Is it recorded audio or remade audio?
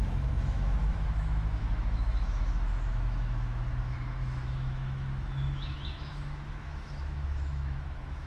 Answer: remade